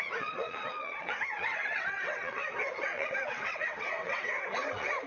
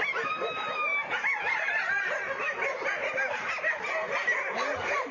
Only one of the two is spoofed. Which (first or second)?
first